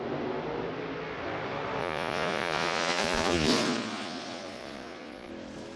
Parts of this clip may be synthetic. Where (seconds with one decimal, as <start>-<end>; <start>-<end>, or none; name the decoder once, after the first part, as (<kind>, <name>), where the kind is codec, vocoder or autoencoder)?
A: 1.8-5.3 (vocoder, Vocos)